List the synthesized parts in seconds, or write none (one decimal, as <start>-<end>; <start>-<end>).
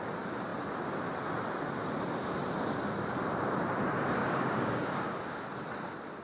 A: 4.2-5.2